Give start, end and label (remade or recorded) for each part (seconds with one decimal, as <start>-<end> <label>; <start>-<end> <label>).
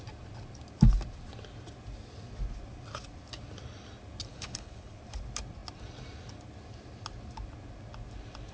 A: 0.0-4.3 recorded; 4.3-5.0 remade; 5.0-8.5 recorded